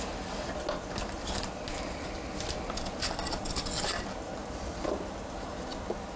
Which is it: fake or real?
real